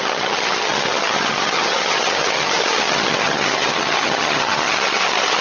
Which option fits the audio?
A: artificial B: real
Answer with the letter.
A